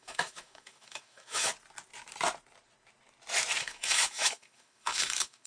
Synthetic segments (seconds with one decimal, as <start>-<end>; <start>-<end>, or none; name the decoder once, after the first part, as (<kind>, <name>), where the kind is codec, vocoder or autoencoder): 0.0-1.5 (autoencoder, DAC-VAE); 3.6-5.5